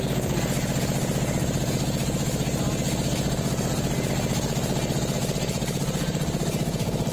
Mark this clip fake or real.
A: real